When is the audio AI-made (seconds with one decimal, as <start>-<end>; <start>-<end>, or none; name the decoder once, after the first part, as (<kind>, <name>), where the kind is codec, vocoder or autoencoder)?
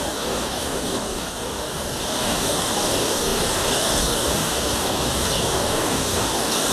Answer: 0.0-6.7 (codec, DAC)